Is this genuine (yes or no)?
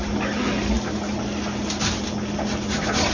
yes